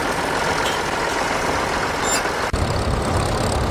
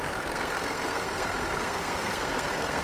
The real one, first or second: first